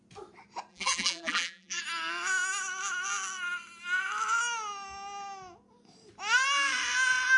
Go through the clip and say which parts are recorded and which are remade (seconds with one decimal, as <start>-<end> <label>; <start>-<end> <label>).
0.0-0.7 recorded; 0.7-1.8 remade; 1.8-7.4 recorded